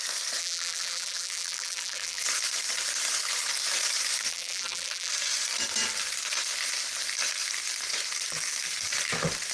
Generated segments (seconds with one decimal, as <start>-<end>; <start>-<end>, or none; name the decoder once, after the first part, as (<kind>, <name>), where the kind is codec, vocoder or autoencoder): 0.4-2.2 (vocoder, BigVGAN v2); 4.3-5.1